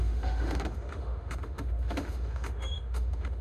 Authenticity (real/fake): fake